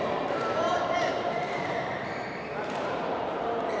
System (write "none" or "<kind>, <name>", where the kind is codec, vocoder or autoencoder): vocoder, BigVGAN v2